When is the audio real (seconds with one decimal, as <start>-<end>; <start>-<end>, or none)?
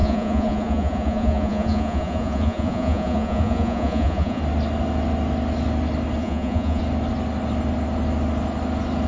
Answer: 4.4-6.2; 6.8-9.1